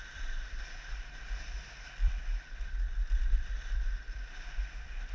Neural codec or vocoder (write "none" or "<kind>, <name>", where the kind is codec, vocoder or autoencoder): vocoder, BigVGAN v2